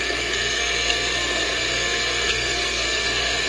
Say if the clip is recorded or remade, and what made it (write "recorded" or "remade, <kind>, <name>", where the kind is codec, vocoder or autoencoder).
remade, codec, SNAC